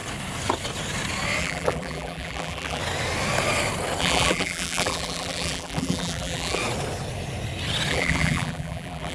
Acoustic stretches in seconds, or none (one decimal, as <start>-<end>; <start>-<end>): 0.0-1.4; 2.8-4.0; 6.6-7.9